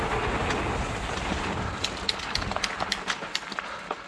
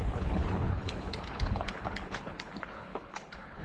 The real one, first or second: first